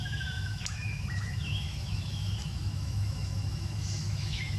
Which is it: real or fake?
fake